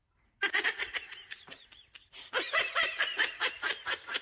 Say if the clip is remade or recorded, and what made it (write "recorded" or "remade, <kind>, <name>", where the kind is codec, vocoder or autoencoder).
remade, vocoder, BigVGAN v2